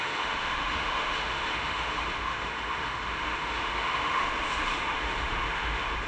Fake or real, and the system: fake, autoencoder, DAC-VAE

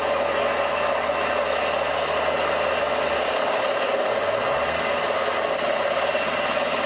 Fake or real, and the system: real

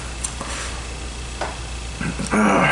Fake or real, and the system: real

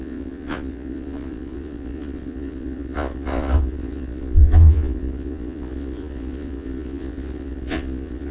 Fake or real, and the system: fake, vocoder, Vocos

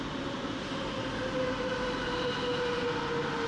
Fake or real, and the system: real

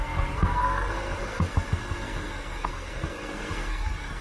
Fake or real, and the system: fake, codec, SNAC